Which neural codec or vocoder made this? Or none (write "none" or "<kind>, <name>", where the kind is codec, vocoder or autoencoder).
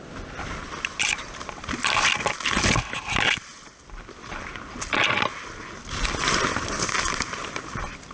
none